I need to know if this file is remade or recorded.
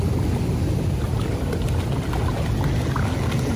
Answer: recorded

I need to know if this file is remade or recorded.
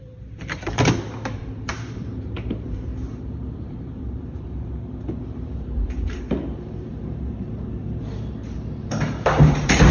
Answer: remade